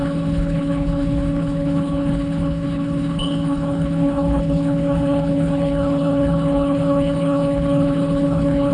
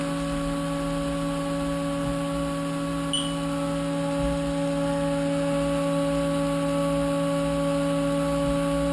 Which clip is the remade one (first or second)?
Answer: first